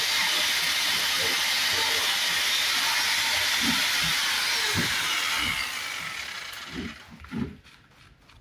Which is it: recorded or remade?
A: recorded